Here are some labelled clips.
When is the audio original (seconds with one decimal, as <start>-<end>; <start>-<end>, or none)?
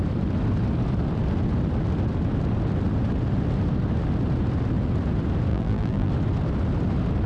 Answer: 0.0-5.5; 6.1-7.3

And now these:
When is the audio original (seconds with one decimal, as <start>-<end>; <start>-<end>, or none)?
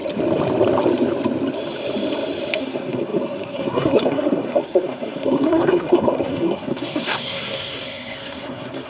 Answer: 0.0-2.6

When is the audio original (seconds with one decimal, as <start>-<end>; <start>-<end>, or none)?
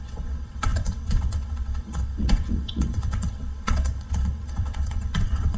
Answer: none